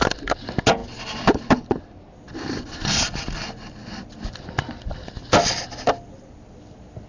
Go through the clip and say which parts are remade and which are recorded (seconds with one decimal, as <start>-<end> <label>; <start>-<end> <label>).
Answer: 0.0-7.1 recorded